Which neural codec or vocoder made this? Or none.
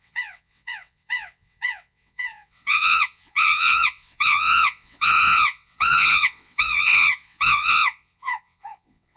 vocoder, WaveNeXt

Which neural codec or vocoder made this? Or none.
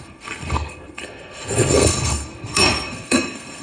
codec, SNAC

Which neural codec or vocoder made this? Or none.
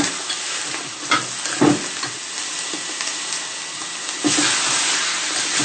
none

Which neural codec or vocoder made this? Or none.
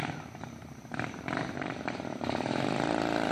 vocoder, BigVGAN v2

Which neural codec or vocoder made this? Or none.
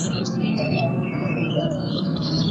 codec, SNAC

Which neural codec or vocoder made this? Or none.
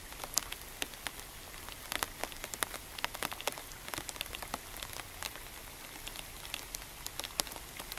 none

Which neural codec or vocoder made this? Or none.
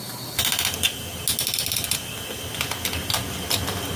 none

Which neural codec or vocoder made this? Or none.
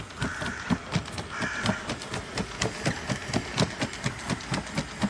none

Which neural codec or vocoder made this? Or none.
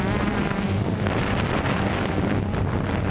none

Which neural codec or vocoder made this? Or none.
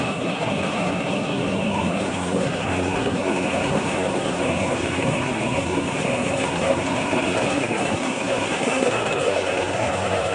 codec, SNAC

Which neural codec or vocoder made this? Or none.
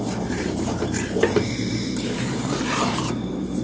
vocoder, BigVGAN v2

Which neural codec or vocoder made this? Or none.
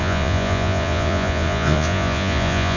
vocoder, Vocos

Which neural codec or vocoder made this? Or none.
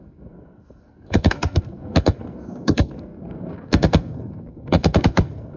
codec, SNAC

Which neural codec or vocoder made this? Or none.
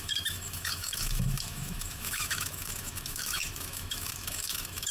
autoencoder, DAC-VAE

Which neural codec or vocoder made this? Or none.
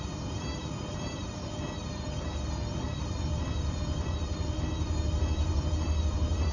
vocoder, BigVGAN v2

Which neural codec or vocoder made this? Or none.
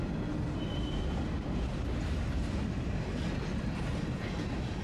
none